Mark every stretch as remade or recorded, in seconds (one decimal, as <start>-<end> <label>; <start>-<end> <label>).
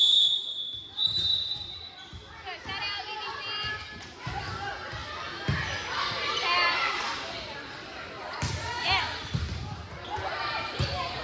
0.0-11.2 recorded